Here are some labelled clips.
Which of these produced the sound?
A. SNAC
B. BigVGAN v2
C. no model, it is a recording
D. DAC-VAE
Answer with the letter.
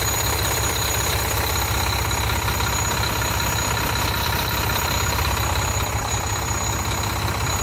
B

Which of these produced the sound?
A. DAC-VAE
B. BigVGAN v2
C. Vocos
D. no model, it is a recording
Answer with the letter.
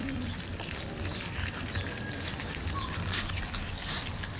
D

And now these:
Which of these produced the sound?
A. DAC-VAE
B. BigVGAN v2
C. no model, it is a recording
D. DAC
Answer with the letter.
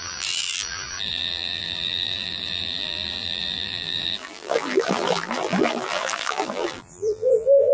B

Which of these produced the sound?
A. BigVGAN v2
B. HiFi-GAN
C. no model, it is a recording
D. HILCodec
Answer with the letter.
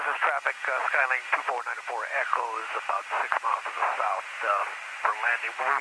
C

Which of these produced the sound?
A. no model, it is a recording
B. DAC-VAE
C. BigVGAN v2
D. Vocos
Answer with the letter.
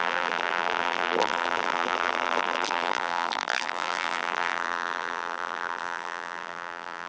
C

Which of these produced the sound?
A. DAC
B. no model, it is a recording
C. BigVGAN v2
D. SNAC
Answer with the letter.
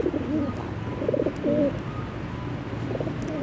B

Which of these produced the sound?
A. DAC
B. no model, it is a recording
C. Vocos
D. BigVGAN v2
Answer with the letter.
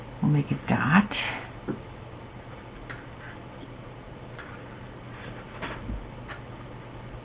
B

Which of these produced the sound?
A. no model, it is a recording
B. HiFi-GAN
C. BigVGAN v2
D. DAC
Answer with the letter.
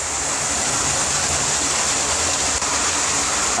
A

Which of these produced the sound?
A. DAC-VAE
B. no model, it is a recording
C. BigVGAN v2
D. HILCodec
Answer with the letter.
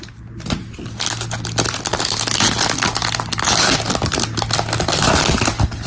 B